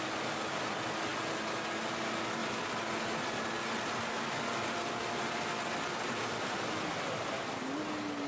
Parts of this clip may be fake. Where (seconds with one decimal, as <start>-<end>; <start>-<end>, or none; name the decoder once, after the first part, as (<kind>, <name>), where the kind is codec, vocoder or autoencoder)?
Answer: none